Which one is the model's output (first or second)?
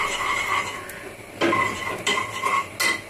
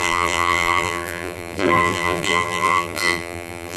second